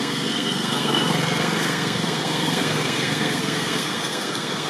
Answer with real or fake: fake